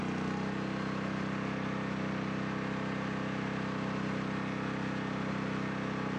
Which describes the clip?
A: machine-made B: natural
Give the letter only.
B